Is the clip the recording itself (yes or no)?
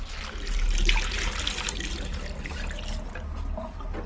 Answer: yes